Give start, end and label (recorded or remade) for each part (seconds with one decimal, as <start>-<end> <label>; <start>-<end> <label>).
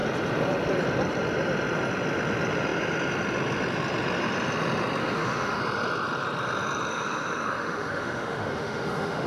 0.0-5.0 recorded; 5.0-5.6 remade; 5.6-6.9 recorded; 6.9-9.3 remade